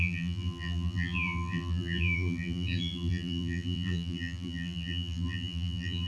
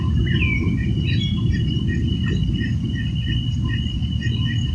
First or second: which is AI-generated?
first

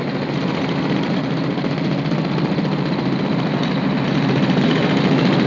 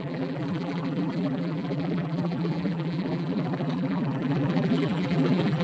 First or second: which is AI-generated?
second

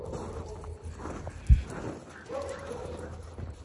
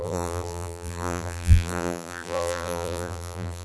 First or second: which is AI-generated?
second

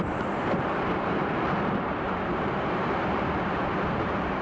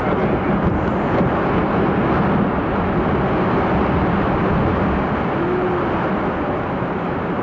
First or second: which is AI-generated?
first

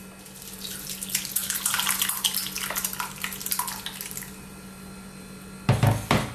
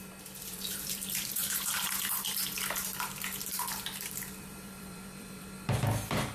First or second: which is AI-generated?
second